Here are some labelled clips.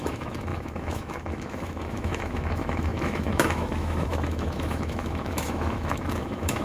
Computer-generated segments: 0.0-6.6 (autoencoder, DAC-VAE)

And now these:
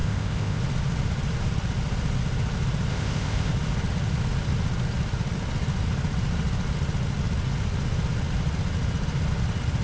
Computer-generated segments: 0.0-0.6 (codec, ZipCodec); 2.9-3.5

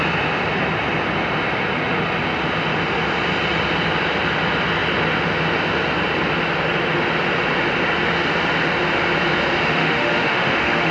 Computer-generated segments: 9.7-10.9 (autoencoder, DAC-VAE)

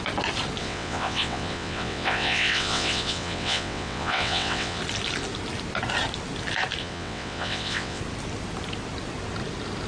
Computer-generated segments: 0.6-4.8 (vocoder, WaveNeXt); 6.8-8.0